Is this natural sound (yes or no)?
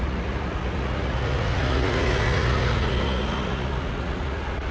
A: no